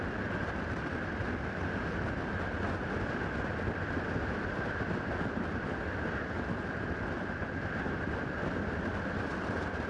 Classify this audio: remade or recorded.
recorded